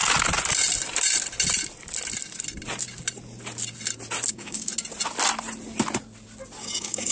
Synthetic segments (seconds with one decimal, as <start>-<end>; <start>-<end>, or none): 4.3-4.7; 6.6-7.1